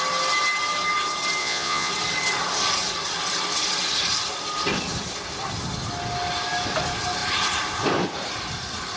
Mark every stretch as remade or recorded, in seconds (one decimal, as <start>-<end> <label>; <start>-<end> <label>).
0.0-1.4 recorded; 1.4-1.9 remade; 1.9-9.0 recorded